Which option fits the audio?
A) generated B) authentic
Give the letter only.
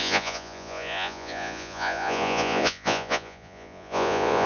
A